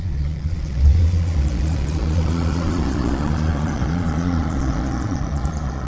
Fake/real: fake